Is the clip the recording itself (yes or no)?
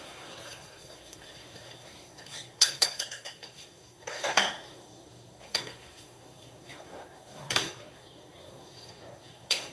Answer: no